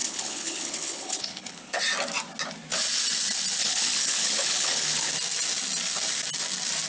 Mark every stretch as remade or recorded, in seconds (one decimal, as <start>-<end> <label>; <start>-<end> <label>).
0.0-1.8 remade; 1.8-3.6 recorded; 3.6-5.1 remade; 5.1-6.9 recorded